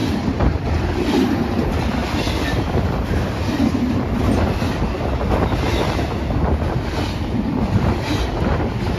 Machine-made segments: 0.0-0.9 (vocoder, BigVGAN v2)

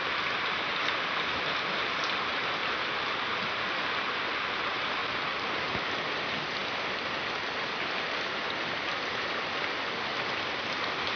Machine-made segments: 5.0-5.7 (vocoder, BigVGAN v2)

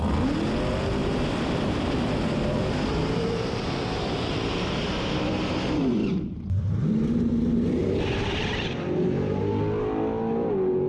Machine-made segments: 1.0-5.3 (vocoder, BigVGAN v2); 6.0-7.3; 7.8-9.4

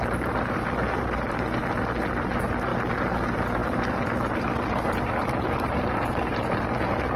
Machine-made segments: 0.0-1.6 (vocoder, BigVGAN v2); 2.1-2.7; 3.2-7.2

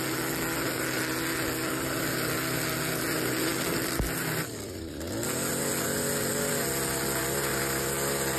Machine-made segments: none

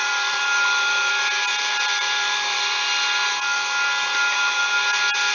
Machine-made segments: 0.0-1.1 (vocoder, BigVGAN v2); 1.5-3.3